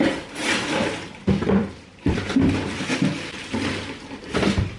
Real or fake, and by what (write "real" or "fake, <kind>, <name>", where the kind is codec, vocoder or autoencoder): fake, vocoder, BigVGAN v2